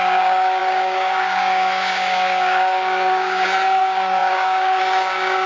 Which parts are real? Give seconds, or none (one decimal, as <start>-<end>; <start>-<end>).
none